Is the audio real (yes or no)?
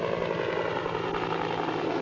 yes